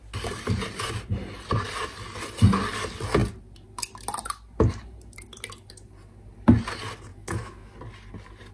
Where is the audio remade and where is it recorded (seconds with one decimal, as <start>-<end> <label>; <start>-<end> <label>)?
0.0-7.1 recorded; 7.1-7.7 remade; 7.7-8.5 recorded

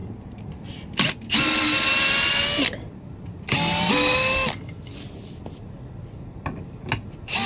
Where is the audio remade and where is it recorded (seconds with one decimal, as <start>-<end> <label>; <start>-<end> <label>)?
0.0-7.5 recorded

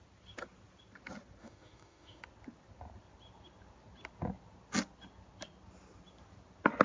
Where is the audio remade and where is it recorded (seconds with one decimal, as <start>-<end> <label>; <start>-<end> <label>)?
0.0-1.4 recorded; 1.4-2.2 remade; 2.2-6.8 recorded

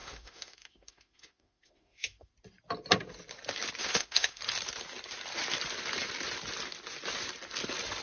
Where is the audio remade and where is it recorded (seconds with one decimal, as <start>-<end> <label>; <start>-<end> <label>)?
0.0-2.3 remade; 2.3-3.8 recorded; 3.8-4.4 remade; 4.4-8.0 recorded

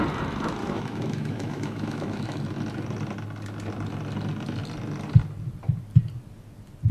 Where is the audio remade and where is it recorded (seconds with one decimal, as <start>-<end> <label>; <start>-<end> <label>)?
0.0-0.6 recorded; 0.6-2.4 remade; 2.4-6.9 recorded

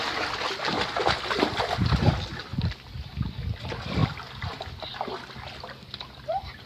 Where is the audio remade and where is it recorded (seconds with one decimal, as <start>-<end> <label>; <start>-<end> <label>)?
0.0-6.7 recorded

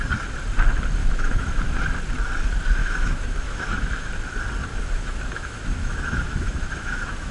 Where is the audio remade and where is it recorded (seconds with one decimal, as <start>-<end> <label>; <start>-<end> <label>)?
0.0-1.0 recorded; 1.0-1.6 remade; 1.6-2.8 recorded; 2.8-4.1 remade; 4.1-4.7 recorded; 4.7-7.3 remade

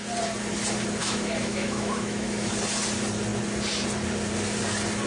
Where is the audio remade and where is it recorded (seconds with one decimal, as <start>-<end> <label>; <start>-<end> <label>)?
0.0-1.0 recorded; 1.0-2.5 remade; 2.5-5.1 recorded